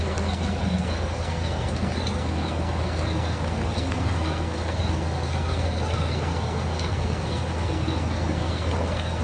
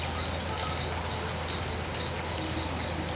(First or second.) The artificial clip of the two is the first